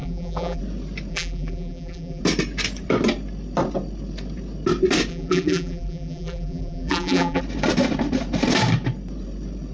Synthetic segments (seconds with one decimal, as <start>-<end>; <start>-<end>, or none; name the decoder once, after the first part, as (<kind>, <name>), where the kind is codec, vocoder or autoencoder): 0.0-0.6 (vocoder, BigVGAN v2); 1.1-2.2; 5.1-7.4